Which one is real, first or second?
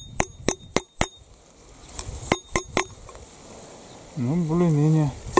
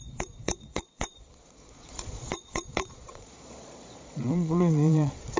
first